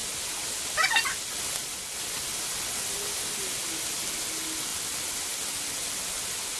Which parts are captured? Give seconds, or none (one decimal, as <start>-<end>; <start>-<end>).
0.0-6.6